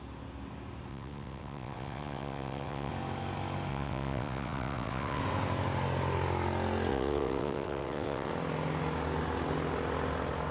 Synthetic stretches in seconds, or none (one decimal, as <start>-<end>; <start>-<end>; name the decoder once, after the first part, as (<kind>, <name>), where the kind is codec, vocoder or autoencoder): 0.9-2.9 (vocoder, WaveNeXt); 3.7-5.2; 6.9-8.3